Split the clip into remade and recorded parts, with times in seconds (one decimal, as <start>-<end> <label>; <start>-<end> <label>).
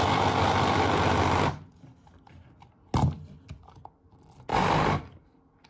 0.0-5.7 recorded